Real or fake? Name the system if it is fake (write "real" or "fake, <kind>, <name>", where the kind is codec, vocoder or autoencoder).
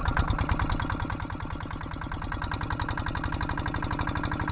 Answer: real